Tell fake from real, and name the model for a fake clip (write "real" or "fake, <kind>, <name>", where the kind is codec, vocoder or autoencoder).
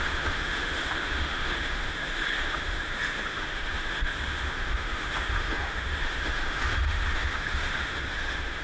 fake, autoencoder, DAC-VAE